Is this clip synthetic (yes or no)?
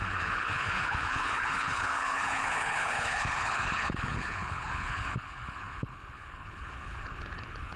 yes